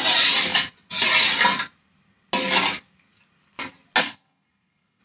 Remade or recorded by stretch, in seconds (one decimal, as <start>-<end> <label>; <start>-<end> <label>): 0.0-4.0 recorded; 4.0-5.0 remade